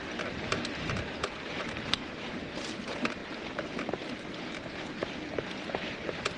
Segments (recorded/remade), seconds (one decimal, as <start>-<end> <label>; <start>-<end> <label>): 0.0-6.4 remade